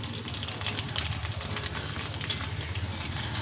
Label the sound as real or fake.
real